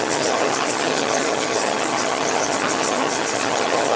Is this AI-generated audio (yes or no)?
yes